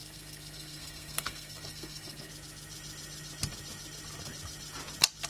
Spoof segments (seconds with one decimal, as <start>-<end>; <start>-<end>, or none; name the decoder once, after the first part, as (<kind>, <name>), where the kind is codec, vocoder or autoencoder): 0.0-2.3 (codec, SNAC)